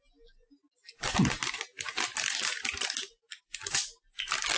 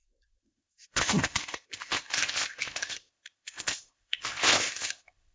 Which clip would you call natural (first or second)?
first